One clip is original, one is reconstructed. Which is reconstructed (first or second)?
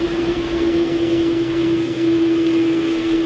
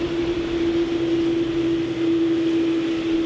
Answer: first